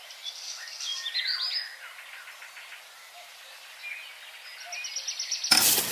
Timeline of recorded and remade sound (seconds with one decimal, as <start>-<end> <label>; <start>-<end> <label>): 0.0-0.9 recorded; 0.9-1.5 remade; 1.5-5.9 recorded